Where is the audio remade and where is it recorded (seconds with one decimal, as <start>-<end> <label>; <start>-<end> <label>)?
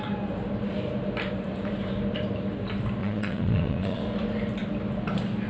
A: 0.0-3.0 recorded; 3.0-4.0 remade; 4.0-5.5 recorded